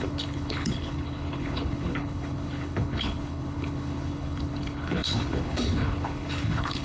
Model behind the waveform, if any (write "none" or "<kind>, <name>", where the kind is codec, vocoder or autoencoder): codec, HILCodec